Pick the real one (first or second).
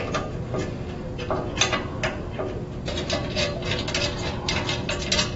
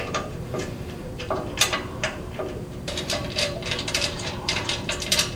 first